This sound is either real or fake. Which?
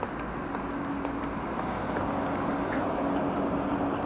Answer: real